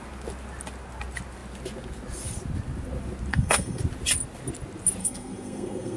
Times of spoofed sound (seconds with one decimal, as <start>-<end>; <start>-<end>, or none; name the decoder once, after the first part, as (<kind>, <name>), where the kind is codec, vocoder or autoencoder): 3.3-3.8 (codec, SNAC); 5.0-6.0